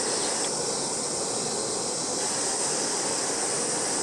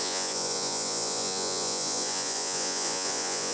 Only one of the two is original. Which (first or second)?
first